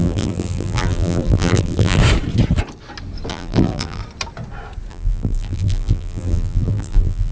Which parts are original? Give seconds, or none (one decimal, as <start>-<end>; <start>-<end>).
2.0-3.3; 4.0-4.9